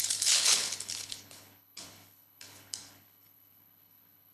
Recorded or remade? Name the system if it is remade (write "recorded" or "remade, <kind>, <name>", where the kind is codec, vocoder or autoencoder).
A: remade, codec, HILCodec